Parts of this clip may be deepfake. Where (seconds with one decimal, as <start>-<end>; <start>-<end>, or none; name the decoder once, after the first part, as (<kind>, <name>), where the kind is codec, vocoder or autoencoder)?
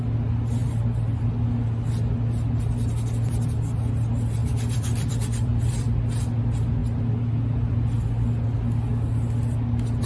4.4-6.0 (vocoder, BigVGAN v2)